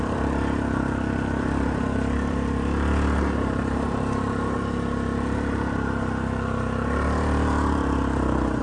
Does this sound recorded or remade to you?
remade